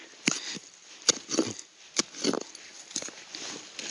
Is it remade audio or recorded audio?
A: recorded